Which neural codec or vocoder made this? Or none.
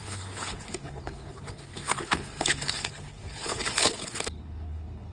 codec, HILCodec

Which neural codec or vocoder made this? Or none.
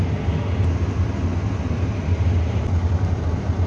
none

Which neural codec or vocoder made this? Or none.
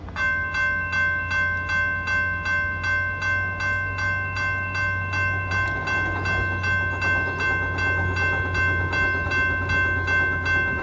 none